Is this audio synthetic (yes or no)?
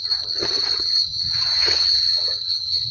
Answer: yes